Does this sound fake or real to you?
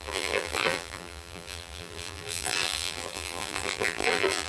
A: fake